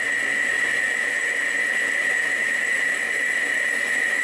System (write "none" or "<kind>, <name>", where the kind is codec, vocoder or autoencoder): none